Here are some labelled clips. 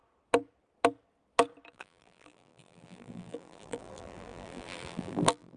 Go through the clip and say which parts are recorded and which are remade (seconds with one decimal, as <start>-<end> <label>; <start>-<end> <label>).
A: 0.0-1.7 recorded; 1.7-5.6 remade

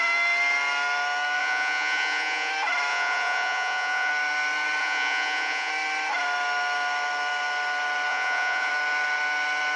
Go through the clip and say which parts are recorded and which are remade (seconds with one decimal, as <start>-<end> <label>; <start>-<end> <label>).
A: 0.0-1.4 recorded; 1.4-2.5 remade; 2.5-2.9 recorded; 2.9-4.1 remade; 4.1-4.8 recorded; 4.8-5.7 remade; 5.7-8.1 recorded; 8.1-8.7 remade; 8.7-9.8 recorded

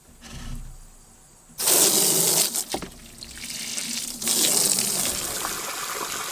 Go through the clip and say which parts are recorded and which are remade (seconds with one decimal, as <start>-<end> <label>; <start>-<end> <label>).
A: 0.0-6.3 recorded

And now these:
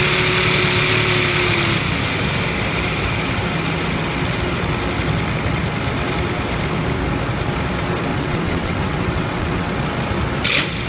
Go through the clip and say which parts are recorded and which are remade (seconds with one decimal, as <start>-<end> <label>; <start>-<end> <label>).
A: 0.0-8.1 recorded; 8.1-9.7 remade; 9.7-10.9 recorded